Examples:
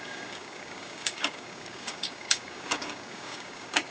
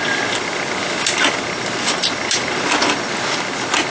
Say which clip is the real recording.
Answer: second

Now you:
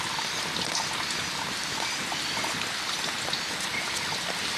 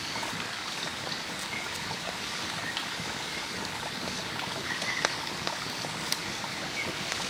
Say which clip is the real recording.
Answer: first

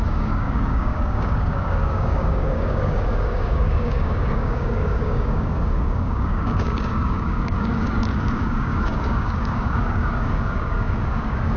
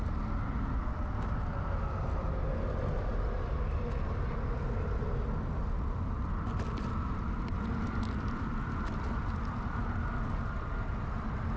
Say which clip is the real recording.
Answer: second